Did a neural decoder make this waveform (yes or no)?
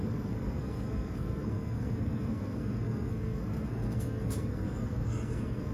yes